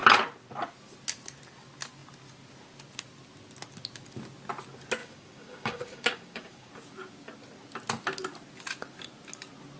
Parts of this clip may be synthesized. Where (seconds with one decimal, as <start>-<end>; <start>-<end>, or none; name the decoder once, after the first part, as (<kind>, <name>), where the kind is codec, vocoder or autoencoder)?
5.0-6.7 (codec, DAC)